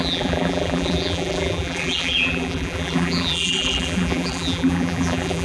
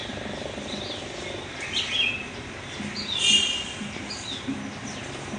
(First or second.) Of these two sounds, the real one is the second